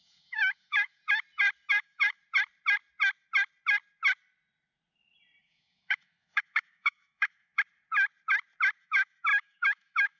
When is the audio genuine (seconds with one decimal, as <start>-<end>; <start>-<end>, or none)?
1.0-1.7; 2.2-5.4; 7.5-8.8